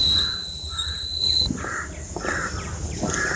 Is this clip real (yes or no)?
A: yes